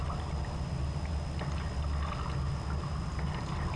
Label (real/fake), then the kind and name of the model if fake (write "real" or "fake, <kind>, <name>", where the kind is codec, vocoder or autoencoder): real